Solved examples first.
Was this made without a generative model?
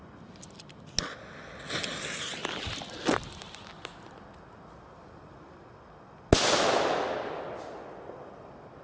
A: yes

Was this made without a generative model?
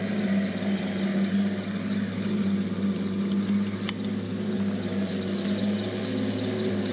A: yes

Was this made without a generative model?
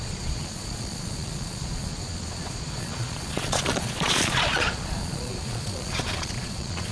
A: no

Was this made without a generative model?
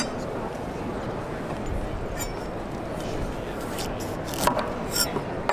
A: yes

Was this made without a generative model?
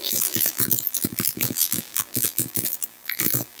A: no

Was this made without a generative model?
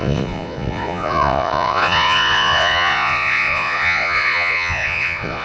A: no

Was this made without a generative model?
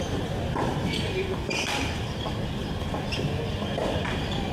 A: yes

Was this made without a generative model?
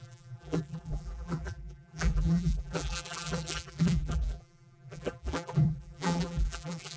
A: no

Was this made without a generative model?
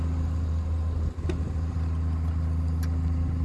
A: yes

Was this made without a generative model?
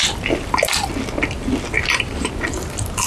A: yes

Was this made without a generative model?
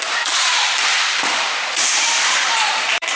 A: no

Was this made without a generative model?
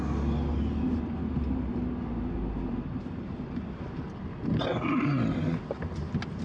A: yes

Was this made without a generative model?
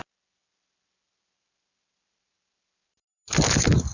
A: yes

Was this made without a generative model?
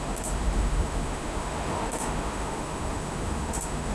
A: no